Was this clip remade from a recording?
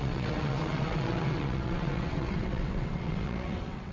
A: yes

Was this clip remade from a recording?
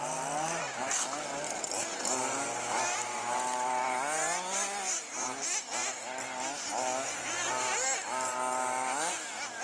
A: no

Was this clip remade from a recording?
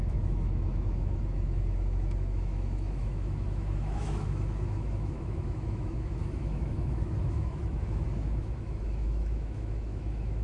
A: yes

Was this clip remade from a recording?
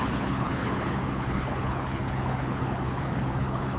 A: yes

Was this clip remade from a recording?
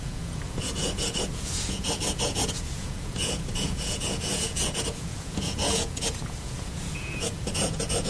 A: yes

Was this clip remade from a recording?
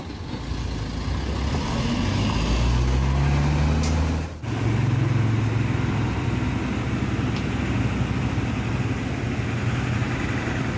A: no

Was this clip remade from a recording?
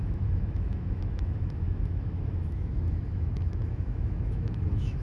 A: yes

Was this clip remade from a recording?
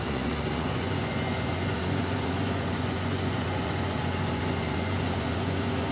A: yes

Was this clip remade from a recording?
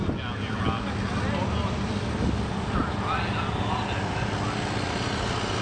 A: no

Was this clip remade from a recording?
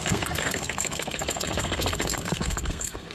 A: yes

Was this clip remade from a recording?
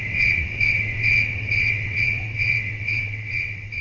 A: yes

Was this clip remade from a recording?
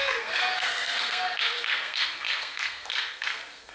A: yes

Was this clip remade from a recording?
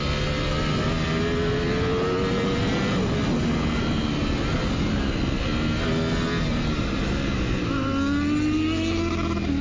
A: no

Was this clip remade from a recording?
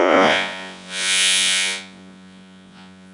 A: yes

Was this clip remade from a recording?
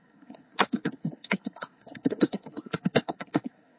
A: yes